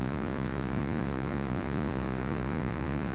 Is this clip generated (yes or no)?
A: yes